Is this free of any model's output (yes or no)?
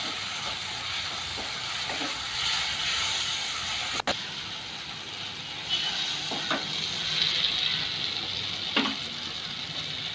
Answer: yes